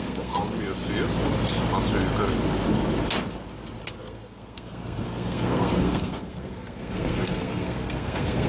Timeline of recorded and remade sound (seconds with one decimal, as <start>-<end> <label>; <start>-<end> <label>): 0.0-0.4 remade; 0.4-4.0 recorded; 4.0-8.5 remade